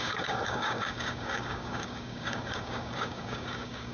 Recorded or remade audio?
remade